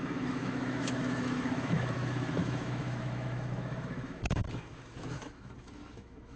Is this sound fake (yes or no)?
yes